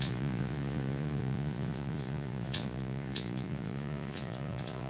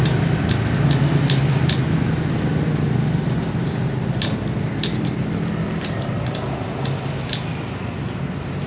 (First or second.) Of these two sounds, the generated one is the first